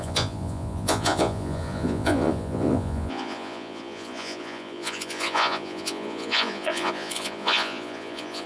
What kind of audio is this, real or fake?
fake